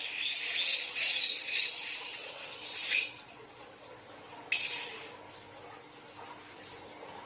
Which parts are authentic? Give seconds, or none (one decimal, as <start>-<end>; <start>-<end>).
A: 0.0-0.7; 4.1-7.3